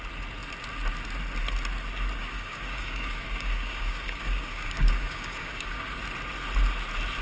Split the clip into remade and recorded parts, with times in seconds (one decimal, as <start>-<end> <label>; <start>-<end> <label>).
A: 0.0-2.2 recorded; 2.2-5.9 remade; 5.9-7.2 recorded